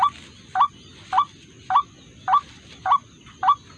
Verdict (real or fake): real